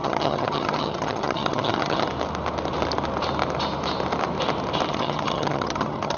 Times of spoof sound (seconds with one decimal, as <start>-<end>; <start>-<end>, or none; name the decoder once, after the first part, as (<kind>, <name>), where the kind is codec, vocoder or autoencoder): 0.0-2.1 (vocoder, HiFi-GAN); 4.9-6.2